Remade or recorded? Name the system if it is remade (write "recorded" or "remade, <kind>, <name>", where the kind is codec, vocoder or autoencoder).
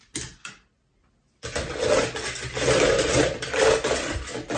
recorded